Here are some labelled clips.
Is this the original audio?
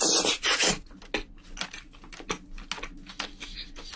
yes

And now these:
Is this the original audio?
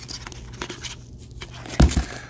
yes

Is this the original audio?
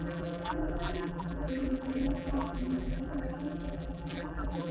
no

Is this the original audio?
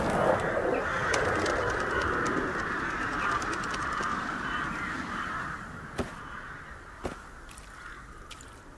yes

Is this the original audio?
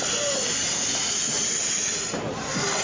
yes